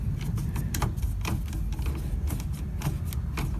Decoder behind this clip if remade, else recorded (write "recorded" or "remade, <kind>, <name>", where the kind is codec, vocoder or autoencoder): recorded